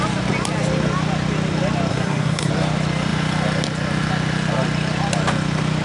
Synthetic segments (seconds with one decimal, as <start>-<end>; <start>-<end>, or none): 1.9-2.5